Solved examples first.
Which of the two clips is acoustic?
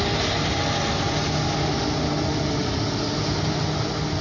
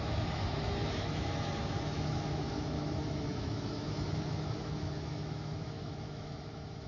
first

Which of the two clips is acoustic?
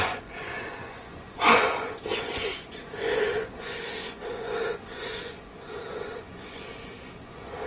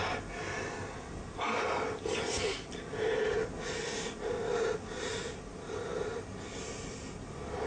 second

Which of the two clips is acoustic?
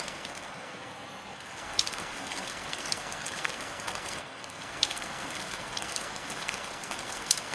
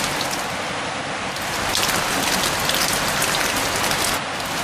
second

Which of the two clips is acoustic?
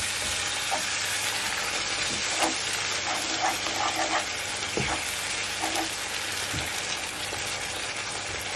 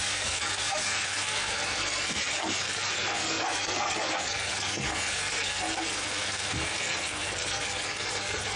first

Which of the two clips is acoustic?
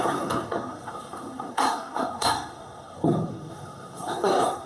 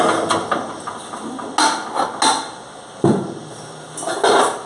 second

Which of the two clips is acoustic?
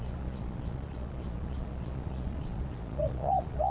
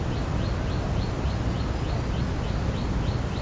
second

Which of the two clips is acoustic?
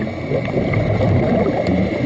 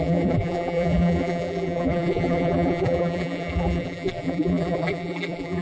first